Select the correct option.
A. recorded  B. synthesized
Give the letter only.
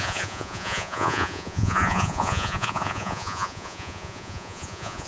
B